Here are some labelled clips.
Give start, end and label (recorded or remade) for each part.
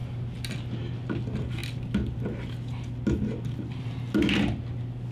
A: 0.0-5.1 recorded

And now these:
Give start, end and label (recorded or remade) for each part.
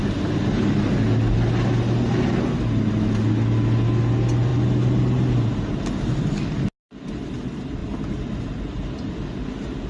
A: 0.0-9.9 recorded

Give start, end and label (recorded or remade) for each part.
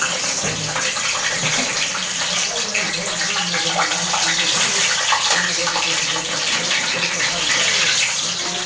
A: 0.0-1.7 recorded; 1.7-2.9 remade; 2.9-5.6 recorded; 5.6-7.2 remade; 7.2-8.7 recorded